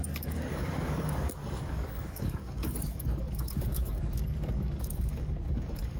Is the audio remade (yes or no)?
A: yes